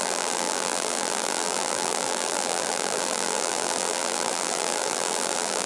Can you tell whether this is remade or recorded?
remade